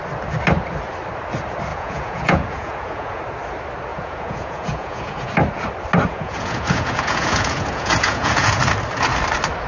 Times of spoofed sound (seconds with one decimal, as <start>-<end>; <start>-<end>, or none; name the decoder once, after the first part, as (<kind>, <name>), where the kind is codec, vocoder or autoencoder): 1.7-3.2 (vocoder, Vocos); 3.9-5.3; 6.1-8.6